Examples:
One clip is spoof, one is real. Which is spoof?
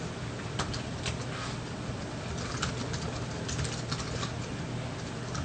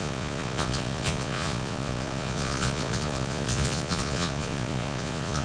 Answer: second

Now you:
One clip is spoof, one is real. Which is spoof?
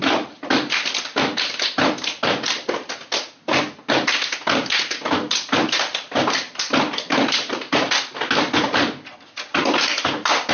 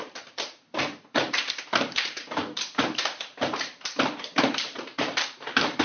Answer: second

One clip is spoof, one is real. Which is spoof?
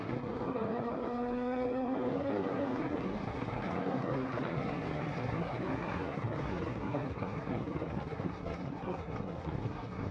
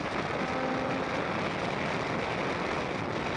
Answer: first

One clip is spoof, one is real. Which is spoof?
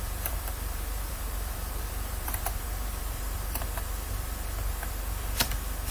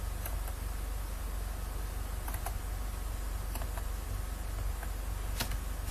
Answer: first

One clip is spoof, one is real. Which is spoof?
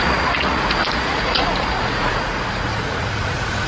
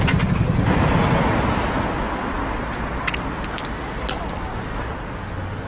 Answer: first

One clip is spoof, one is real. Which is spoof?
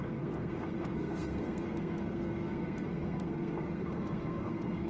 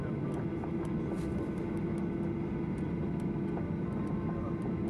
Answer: first